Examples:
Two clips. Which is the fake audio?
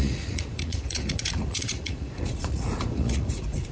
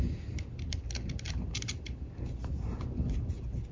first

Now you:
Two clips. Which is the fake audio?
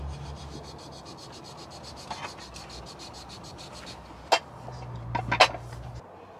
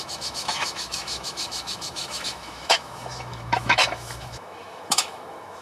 second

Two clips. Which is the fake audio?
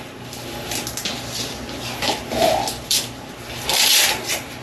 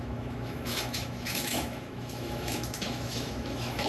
second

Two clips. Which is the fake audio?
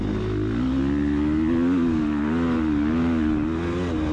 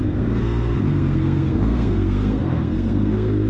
second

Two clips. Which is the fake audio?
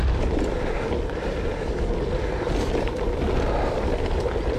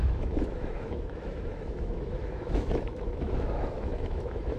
second